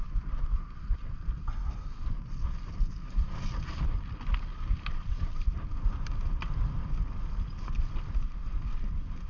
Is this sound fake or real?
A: real